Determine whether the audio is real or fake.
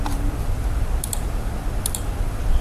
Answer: fake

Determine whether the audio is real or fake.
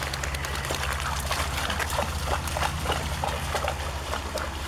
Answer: real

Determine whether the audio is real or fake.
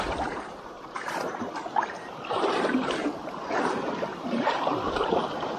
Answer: fake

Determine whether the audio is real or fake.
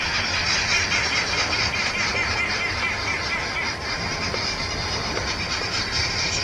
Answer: real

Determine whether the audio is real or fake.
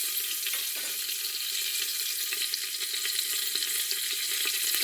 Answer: real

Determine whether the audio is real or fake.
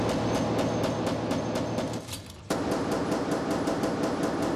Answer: real